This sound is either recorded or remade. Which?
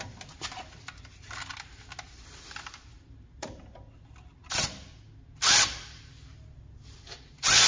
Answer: recorded